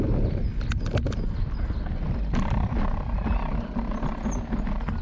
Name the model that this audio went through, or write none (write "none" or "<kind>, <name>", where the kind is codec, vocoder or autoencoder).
none